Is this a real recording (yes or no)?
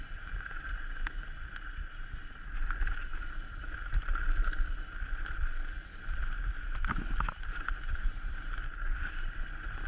yes